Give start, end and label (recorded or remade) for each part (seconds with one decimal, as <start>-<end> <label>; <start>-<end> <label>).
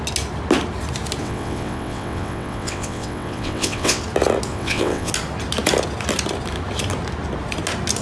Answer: 0.0-1.2 recorded; 1.2-4.0 remade; 4.0-4.5 recorded; 4.5-5.1 remade; 5.1-8.0 recorded